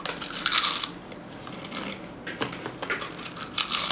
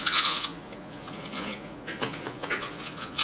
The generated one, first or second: second